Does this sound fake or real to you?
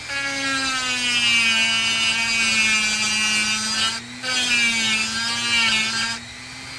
real